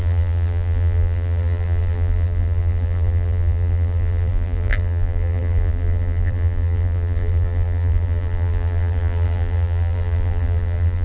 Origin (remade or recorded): remade